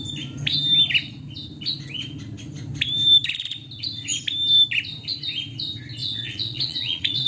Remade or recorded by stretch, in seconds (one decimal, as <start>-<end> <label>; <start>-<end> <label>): 0.0-6.0 recorded; 6.0-7.3 remade